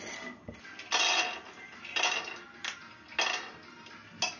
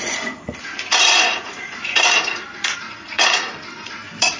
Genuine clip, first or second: first